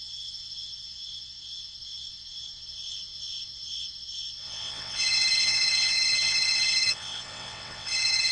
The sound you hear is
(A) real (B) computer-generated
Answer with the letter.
B